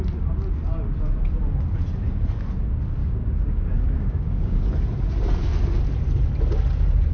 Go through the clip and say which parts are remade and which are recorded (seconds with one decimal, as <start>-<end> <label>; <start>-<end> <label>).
0.0-3.0 recorded; 3.0-4.7 remade; 4.7-7.1 recorded